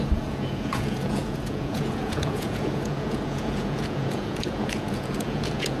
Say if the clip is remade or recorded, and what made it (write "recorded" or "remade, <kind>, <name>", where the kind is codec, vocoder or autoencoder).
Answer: remade, vocoder, Vocos